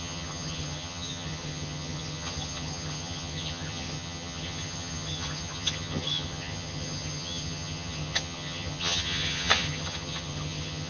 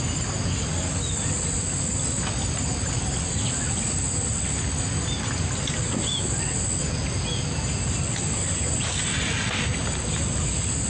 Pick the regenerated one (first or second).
first